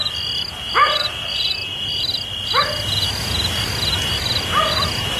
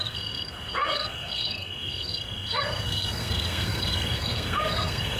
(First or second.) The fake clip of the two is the second